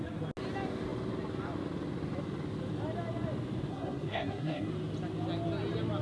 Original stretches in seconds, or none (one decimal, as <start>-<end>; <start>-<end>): 0.0-3.7; 4.7-6.0